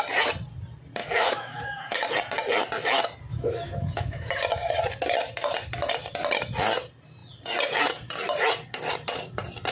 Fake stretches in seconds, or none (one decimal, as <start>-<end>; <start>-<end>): 1.0-2.0; 3.3-4.3